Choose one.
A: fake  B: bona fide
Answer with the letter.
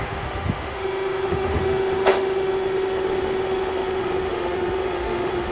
A